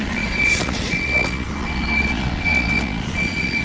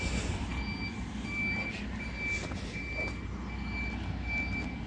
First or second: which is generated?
first